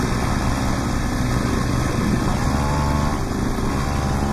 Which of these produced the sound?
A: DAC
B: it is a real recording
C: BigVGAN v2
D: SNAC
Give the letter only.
B